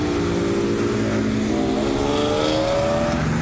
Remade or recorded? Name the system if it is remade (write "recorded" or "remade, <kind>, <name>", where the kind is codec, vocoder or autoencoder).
recorded